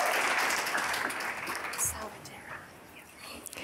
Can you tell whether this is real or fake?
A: real